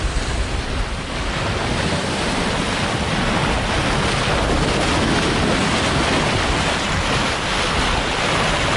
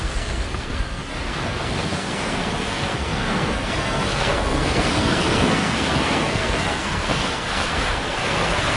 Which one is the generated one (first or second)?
second